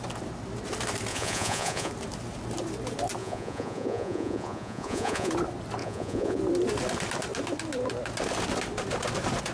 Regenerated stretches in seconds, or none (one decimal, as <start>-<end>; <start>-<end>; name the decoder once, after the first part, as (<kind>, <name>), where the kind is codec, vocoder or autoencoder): 1.1-1.9 (vocoder, Vocos); 3.2-5.3; 5.8-6.4